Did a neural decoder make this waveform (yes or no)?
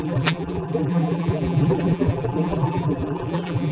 yes